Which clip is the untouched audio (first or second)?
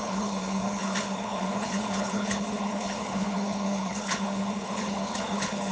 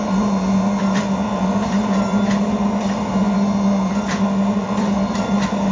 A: second